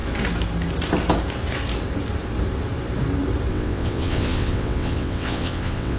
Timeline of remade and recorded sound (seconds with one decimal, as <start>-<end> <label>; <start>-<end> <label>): 0.0-3.5 recorded; 3.5-6.0 remade